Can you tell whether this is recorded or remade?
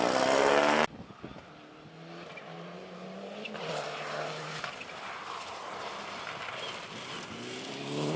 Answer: recorded